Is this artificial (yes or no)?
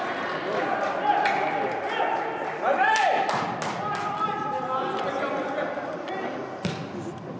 no